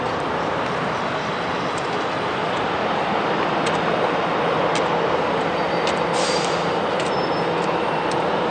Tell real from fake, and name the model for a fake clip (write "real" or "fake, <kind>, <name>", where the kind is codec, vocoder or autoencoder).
real